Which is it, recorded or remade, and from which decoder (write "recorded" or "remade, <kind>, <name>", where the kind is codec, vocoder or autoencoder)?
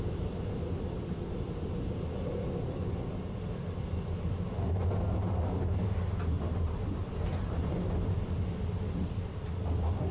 recorded